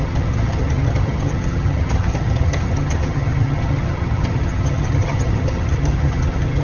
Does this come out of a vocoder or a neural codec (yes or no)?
yes